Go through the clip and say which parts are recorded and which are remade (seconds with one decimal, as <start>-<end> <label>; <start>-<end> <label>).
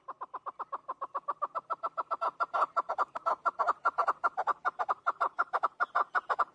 0.0-0.8 remade; 0.8-2.2 recorded; 2.2-6.5 remade